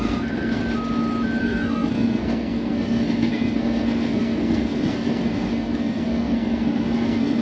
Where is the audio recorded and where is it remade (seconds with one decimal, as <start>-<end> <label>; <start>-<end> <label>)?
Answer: 0.0-0.6 remade; 0.6-1.4 recorded; 1.4-7.4 remade